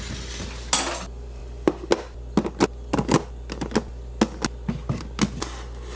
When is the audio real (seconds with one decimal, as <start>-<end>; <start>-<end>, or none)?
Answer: 0.0-6.0